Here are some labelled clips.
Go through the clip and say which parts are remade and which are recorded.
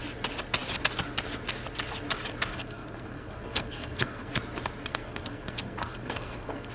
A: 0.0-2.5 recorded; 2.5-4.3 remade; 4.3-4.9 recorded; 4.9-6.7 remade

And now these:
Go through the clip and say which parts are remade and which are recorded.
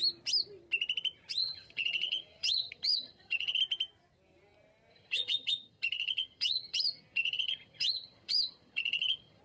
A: 0.0-1.4 recorded; 1.4-3.6 remade; 3.6-4.9 recorded; 4.9-9.4 remade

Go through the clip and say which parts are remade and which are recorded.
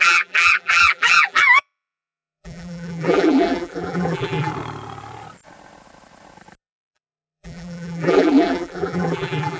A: 0.0-4.5 remade; 4.5-6.6 recorded; 6.6-9.6 remade